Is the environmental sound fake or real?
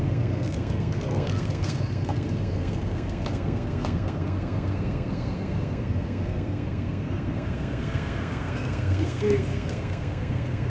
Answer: fake